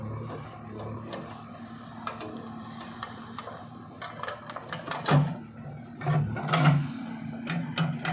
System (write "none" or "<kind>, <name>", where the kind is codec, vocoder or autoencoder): none